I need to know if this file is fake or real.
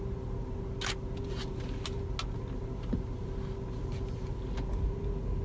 real